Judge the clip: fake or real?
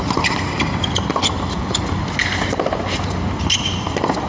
real